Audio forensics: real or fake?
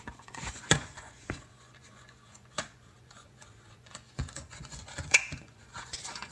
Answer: fake